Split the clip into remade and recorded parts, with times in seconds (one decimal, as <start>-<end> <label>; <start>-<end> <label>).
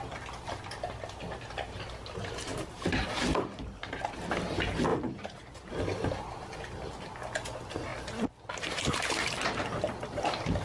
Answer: 0.0-2.5 recorded; 2.5-3.1 remade; 3.1-4.9 recorded; 4.9-5.7 remade; 5.7-10.6 recorded